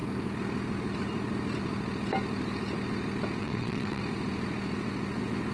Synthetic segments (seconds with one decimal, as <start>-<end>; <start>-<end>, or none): 3.4-4.0